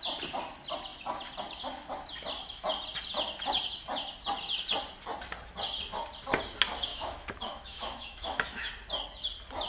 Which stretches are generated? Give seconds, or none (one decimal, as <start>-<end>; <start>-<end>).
6.9-8.7